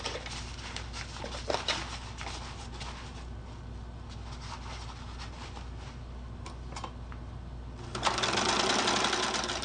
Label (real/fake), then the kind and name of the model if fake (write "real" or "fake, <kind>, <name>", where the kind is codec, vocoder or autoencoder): real